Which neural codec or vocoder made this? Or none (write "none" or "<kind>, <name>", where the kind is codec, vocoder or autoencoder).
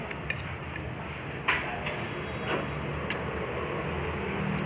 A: none